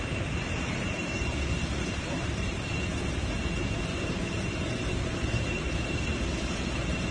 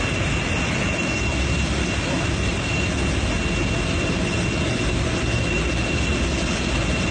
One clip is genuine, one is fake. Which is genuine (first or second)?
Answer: second